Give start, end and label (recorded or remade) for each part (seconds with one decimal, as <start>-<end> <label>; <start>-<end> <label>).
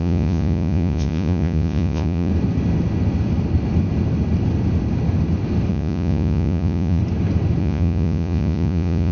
0.0-2.3 remade; 2.3-5.7 recorded; 5.7-7.0 remade; 7.0-7.6 recorded; 7.6-9.1 remade